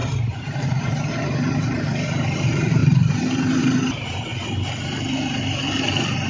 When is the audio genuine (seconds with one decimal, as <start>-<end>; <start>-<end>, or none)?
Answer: 4.3-6.3